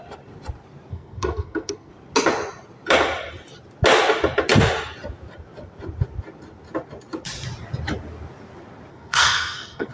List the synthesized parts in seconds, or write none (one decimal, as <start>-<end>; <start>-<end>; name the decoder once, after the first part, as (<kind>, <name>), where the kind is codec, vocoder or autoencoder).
0.9-1.9 (codec, SNAC); 8.9-9.9